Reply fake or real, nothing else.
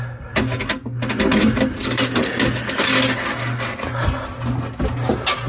real